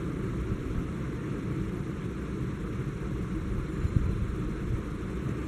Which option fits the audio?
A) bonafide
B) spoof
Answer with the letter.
A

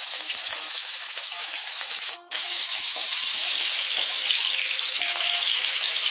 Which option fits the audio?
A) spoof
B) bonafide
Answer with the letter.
A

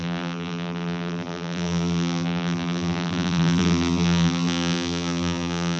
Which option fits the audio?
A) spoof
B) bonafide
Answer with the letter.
A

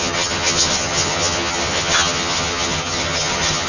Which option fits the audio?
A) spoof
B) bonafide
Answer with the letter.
A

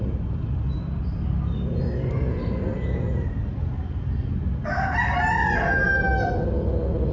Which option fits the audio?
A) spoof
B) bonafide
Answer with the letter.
B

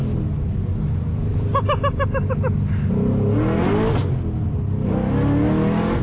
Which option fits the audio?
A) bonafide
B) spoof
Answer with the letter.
A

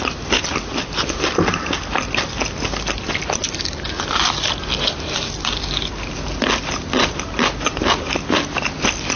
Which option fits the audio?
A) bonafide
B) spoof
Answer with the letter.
A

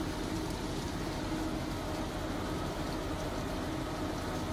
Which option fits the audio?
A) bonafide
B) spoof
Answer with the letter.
A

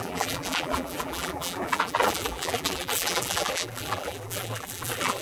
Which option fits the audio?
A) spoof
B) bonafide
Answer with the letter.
A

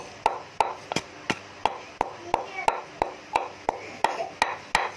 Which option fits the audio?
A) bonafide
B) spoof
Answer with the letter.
A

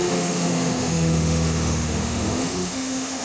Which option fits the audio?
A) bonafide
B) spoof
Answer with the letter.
B